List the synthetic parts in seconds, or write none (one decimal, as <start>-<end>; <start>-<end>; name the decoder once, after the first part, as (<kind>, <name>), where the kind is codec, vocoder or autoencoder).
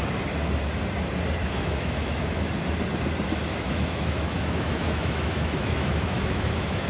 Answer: 1.4-2.5 (autoencoder, DAC-VAE); 3.4-6.9